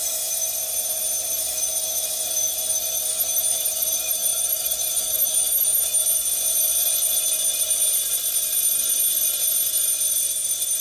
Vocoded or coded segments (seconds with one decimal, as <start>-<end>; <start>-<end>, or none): 0.0-0.6; 1.4-6.0